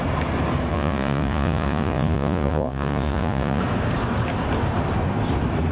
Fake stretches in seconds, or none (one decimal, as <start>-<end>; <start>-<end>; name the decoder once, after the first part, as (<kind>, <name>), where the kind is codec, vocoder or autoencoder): 0.7-3.6 (vocoder, Vocos)